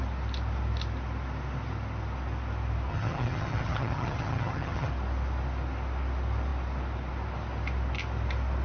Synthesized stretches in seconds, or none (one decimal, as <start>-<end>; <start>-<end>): 2.9-4.9